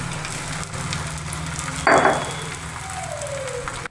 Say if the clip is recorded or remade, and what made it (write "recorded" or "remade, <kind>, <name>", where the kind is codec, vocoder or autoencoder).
recorded